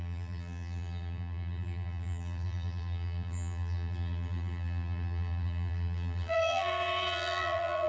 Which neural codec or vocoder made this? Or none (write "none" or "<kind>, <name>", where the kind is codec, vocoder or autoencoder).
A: vocoder, BigVGAN v2